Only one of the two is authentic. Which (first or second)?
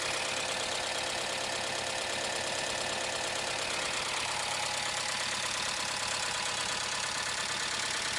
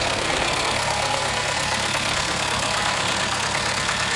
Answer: first